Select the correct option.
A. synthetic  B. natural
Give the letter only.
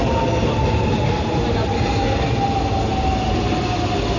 B